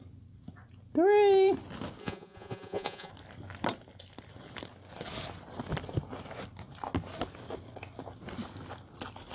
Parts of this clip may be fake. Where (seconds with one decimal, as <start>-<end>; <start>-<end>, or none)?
2.0-3.1